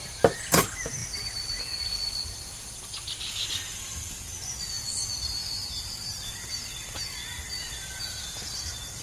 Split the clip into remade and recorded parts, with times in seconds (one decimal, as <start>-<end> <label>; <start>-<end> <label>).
0.0-1.0 recorded; 1.0-1.6 remade; 1.6-5.6 recorded; 5.6-6.5 remade; 6.5-9.0 recorded